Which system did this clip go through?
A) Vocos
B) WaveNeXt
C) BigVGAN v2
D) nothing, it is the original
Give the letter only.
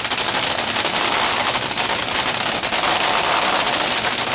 D